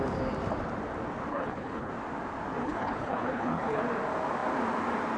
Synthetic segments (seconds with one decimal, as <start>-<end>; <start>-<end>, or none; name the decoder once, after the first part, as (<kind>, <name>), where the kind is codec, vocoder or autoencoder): 1.3-1.9 (codec, HILCodec); 2.6-3.8